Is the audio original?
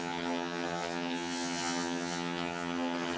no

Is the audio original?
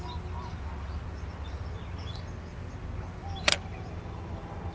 yes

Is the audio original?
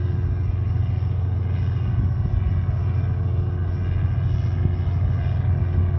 yes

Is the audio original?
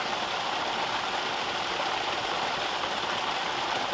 yes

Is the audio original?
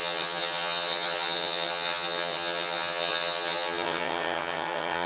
no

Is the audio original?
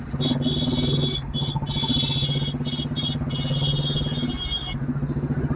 yes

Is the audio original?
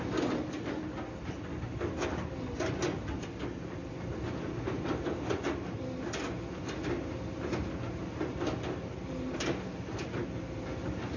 yes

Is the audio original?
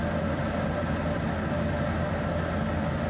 yes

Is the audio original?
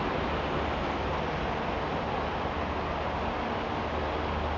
yes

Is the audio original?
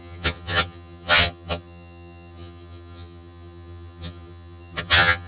no